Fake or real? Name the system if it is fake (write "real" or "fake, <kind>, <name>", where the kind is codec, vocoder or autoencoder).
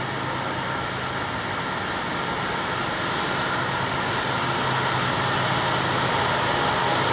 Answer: real